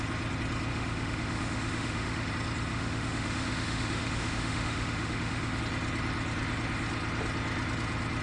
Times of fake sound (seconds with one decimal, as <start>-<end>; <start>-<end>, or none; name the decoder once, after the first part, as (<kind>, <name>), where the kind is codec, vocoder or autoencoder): 0.7-2.3 (autoencoder, DAC-VAE); 2.7-5.6